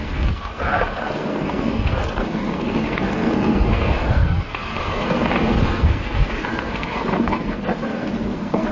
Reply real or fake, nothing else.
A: fake